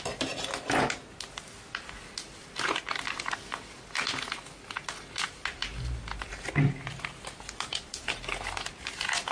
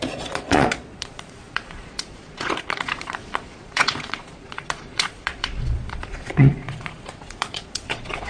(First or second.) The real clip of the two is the first